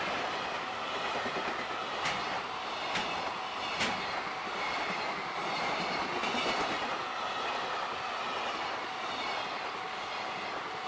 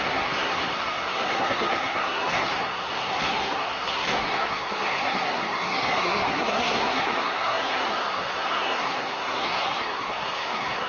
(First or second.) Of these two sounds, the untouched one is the first